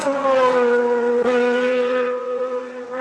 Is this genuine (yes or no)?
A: no